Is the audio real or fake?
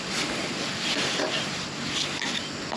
real